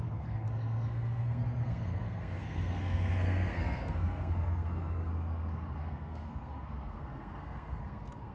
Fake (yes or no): yes